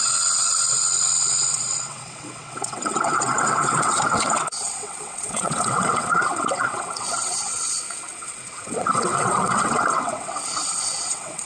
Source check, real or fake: fake